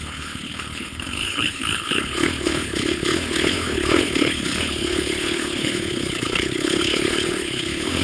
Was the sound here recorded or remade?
remade